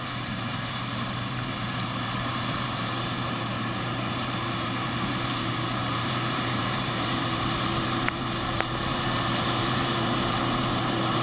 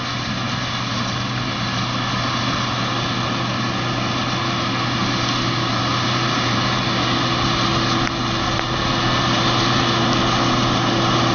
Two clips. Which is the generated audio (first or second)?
first